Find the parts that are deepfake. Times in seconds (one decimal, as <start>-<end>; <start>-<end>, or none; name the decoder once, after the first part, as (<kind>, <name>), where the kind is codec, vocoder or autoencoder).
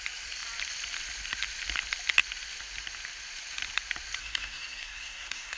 4.2-5.6 (codec, SNAC)